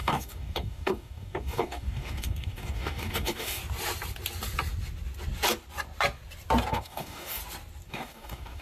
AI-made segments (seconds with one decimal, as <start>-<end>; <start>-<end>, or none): 0.0-3.6; 6.7-7.4; 7.9-8.6